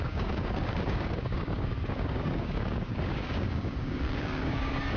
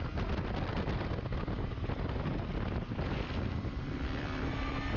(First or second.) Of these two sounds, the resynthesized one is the first